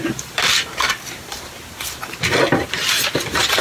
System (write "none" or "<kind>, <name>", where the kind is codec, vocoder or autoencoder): vocoder, BigVGAN v2